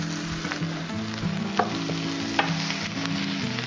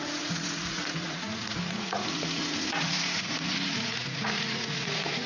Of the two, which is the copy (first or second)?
second